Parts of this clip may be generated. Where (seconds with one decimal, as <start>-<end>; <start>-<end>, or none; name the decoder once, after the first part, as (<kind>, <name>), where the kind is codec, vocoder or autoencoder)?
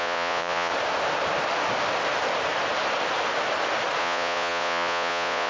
0.0-0.7 (vocoder, Vocos); 4.0-5.5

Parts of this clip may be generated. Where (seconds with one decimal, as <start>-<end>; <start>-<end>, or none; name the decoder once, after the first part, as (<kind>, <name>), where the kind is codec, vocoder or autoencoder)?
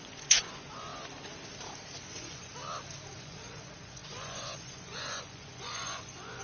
0.0-0.9 (vocoder, Vocos); 2.0-2.5; 3.1-6.4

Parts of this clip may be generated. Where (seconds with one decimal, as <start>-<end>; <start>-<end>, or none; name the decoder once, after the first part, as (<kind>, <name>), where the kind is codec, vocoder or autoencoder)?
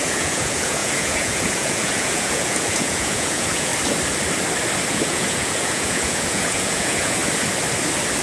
0.0-3.7 (vocoder, Vocos); 4.9-7.2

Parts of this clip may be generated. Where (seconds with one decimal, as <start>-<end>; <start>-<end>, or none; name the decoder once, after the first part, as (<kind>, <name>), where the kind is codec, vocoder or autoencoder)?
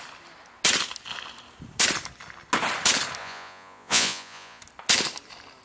3.2-4.6 (vocoder, Vocos)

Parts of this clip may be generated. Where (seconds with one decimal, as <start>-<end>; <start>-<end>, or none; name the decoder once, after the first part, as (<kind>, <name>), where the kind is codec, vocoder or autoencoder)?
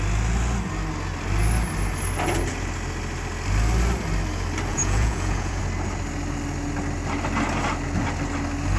4.7-5.6 (vocoder, Vocos)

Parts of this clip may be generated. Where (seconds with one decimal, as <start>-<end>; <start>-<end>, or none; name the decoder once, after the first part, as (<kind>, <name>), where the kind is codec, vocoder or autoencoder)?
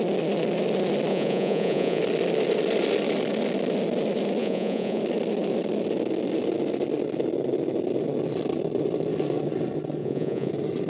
1.1-2.0 (vocoder, Vocos); 4.4-5.0; 10.0-10.5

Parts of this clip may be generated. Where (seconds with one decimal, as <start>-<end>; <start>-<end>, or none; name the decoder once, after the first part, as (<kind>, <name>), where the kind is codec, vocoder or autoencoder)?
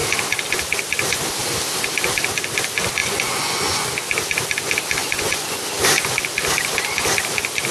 3.0-3.9 (vocoder, Vocos); 5.0-5.6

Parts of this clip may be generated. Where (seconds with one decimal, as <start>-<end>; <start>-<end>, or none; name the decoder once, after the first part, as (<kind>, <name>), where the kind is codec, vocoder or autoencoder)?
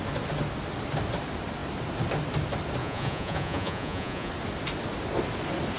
2.8-4.3 (vocoder, Vocos)